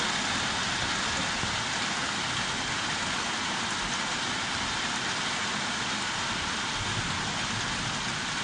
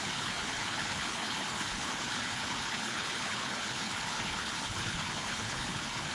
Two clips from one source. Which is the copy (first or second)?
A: second